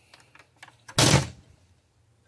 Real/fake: real